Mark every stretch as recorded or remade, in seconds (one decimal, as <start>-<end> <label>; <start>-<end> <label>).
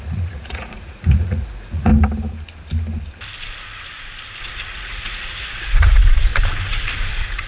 0.0-1.9 remade; 1.9-4.4 recorded; 4.4-6.3 remade; 6.3-7.1 recorded; 7.1-7.5 remade